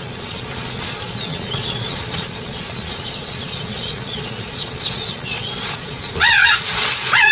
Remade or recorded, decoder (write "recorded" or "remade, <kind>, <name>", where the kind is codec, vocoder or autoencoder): remade, vocoder, Vocos